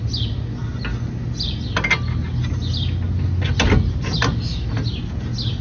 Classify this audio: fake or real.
real